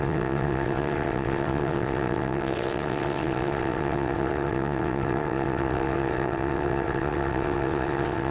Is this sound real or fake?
fake